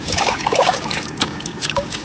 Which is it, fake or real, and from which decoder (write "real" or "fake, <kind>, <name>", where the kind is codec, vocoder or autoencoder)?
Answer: fake, codec, DAC